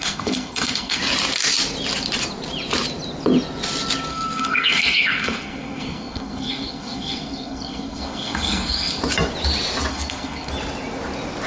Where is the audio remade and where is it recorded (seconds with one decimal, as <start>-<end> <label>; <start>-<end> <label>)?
0.0-1.0 remade; 1.0-4.1 recorded; 4.1-9.0 remade; 9.0-9.9 recorded; 9.9-10.5 remade; 10.5-11.5 recorded